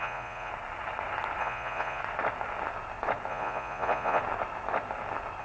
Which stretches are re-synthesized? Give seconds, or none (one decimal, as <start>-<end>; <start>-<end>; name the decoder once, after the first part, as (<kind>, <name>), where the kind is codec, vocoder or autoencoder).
0.0-0.5 (vocoder, Vocos); 1.4-2.0; 3.3-4.2